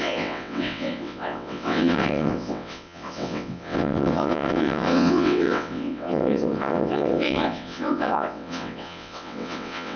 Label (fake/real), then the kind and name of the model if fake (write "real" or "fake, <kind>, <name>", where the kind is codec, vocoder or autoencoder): fake, vocoder, WaveNeXt